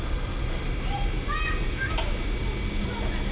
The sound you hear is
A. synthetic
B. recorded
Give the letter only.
B